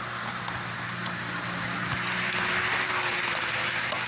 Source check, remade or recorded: recorded